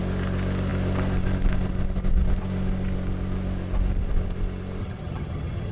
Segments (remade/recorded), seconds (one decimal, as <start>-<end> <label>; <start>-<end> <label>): 0.0-4.8 recorded; 4.8-5.7 remade